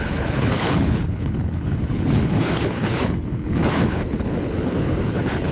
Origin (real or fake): fake